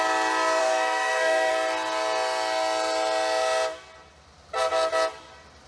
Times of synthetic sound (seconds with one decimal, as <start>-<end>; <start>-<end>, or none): 0.6-1.5